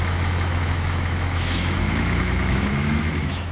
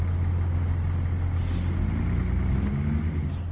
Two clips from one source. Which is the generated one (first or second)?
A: first